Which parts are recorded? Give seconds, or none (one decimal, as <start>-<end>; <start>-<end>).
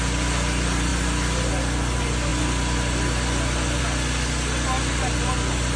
0.0-5.8